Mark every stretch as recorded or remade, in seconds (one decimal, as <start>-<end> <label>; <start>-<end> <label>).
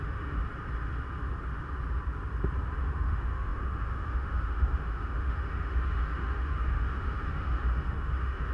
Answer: 0.0-0.4 remade; 0.4-2.8 recorded; 2.8-8.5 remade